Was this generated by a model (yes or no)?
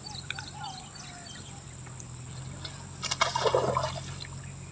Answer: no